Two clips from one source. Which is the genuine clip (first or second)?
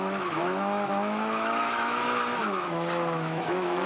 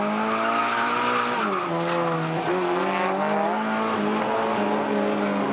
second